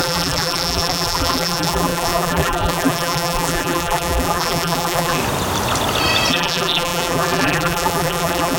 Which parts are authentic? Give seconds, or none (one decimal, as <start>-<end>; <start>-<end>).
5.2-6.3